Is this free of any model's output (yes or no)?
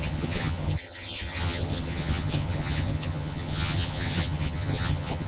no